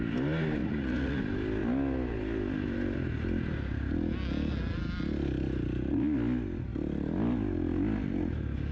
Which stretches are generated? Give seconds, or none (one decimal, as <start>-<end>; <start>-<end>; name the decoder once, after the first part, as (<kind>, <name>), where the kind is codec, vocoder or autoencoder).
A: 0.6-1.2 (vocoder, Vocos)